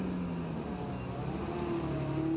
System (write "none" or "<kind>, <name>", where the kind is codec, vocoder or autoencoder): none